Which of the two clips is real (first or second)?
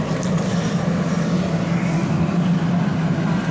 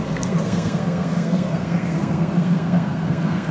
first